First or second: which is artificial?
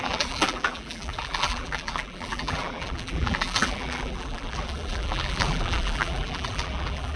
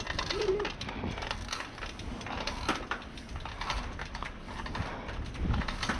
first